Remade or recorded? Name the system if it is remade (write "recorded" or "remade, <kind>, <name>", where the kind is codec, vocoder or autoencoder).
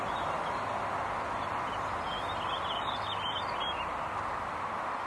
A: recorded